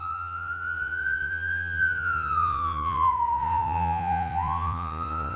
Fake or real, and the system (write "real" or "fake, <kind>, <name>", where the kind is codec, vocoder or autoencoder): fake, vocoder, Vocos